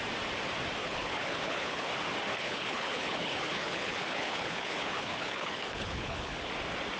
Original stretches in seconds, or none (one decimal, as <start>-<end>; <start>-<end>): 0.0-0.8; 1.9-2.3; 6.5-7.0